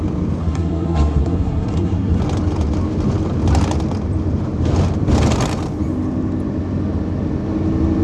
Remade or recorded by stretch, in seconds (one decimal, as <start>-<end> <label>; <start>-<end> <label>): 0.0-0.4 recorded; 0.4-2.2 remade; 2.2-8.0 recorded

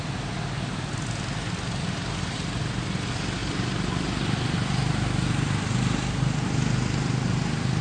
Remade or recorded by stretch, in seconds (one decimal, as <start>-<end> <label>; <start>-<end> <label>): 0.0-7.8 recorded

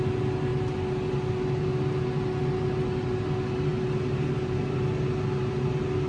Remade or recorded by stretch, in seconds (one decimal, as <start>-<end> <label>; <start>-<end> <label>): 0.0-6.1 recorded

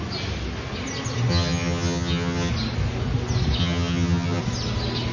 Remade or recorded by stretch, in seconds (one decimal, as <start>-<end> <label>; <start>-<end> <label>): 0.0-1.3 recorded; 1.3-2.5 remade; 2.5-3.6 recorded; 3.6-4.4 remade; 4.4-5.1 recorded

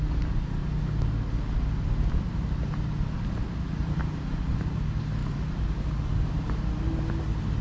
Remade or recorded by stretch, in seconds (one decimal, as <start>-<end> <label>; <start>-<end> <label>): 0.0-3.8 recorded; 3.8-4.3 remade; 4.3-5.2 recorded; 5.2-6.3 remade; 6.3-7.6 recorded

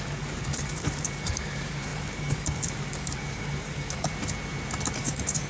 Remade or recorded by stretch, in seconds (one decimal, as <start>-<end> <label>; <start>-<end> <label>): 0.0-4.1 remade; 4.1-5.0 recorded; 5.0-5.5 remade